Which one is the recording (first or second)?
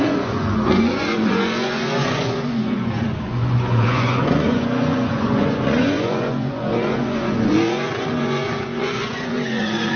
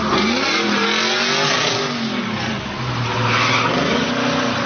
second